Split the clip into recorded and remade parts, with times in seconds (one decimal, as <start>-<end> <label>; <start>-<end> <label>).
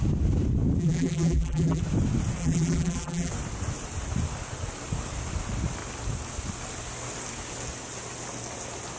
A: 0.0-0.8 recorded; 0.8-1.8 remade; 1.8-2.4 recorded; 2.4-3.3 remade; 3.3-9.0 recorded